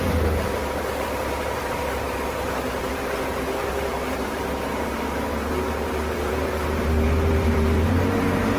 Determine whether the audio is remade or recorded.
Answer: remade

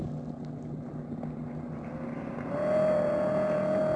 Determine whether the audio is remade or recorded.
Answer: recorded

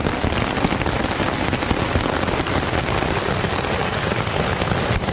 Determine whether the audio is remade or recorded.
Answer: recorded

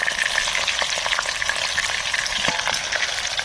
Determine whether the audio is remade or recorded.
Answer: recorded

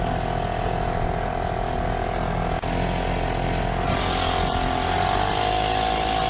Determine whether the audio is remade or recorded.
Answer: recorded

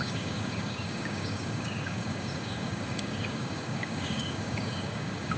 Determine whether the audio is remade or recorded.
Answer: remade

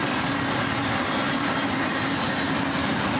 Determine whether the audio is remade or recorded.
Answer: recorded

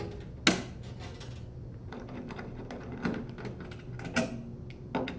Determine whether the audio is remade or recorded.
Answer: recorded